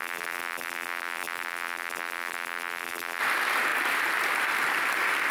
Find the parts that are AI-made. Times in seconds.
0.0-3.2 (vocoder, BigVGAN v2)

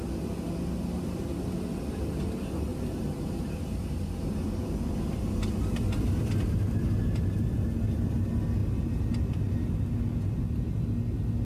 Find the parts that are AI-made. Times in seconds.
2.7-3.9 (vocoder, BigVGAN v2); 8.6-9.1

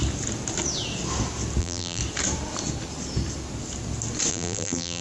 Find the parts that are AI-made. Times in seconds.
1.6-2.0 (vocoder, BigVGAN v2); 4.3-5.0

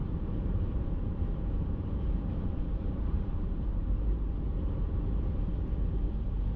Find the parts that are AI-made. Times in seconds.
0.0-4.0 (vocoder, BigVGAN v2)

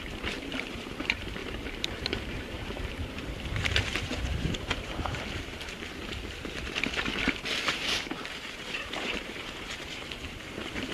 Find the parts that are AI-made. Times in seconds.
0.0-6.0 (vocoder, BigVGAN v2); 7.7-10.9